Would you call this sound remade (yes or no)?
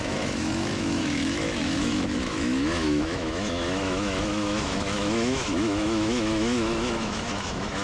yes